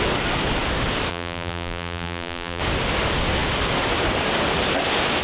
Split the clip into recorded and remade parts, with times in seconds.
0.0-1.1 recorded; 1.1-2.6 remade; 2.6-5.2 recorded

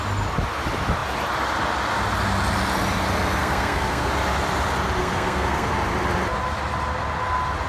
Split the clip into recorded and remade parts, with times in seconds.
0.0-3.4 recorded; 3.4-4.1 remade; 4.1-5.0 recorded; 5.0-5.7 remade; 5.7-7.7 recorded

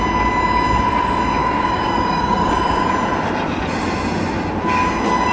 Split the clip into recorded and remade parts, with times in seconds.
0.0-1.4 recorded; 1.4-2.5 remade; 2.5-5.3 recorded

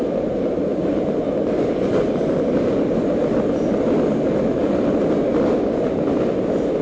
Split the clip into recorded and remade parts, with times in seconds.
0.0-6.8 recorded

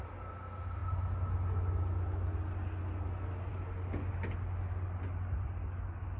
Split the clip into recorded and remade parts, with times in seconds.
0.0-6.2 recorded

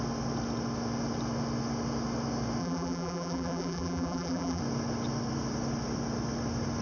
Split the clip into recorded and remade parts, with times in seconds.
0.0-2.6 recorded; 2.6-4.6 remade; 4.6-6.8 recorded

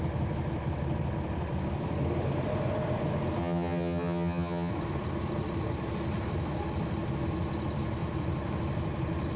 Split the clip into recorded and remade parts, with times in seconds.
0.0-3.4 recorded; 3.4-4.7 remade; 4.7-9.4 recorded